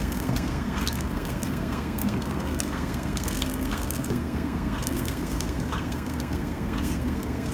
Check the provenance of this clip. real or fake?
fake